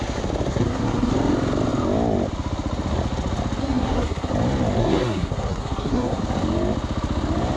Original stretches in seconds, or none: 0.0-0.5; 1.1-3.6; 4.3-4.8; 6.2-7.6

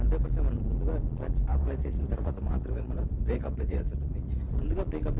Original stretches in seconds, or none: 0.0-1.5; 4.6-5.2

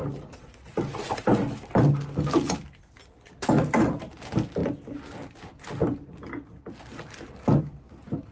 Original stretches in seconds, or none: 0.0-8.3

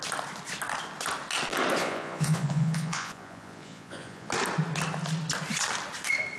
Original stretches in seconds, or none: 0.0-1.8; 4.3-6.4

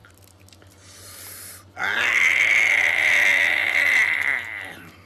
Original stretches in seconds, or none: 0.0-5.1